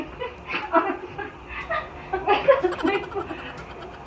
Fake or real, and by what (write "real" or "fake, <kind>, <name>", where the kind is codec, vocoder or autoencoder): real